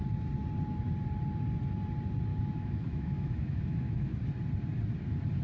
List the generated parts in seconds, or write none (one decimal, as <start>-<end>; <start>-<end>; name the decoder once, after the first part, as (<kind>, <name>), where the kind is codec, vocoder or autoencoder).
2.3-4.2 (autoencoder, DAC-VAE)